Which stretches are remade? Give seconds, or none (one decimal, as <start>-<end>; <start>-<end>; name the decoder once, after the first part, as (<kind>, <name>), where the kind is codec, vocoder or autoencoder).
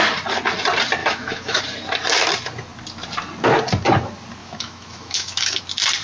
1.0-1.6 (autoencoder, DAC-VAE); 4.4-5.6